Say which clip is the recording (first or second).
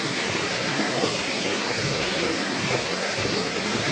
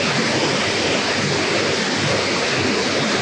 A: second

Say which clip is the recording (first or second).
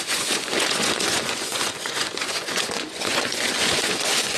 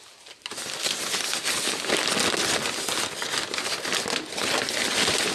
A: second